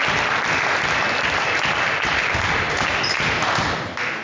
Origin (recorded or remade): recorded